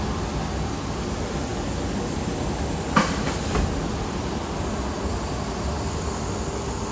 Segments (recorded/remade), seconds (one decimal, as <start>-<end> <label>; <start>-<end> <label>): 0.0-6.9 recorded